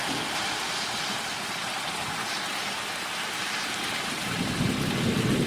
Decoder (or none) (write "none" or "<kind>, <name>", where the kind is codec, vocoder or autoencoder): none